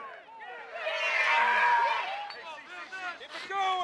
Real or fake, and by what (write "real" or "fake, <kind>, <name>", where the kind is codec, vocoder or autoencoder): real